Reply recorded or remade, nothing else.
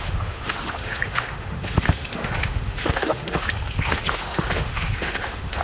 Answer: remade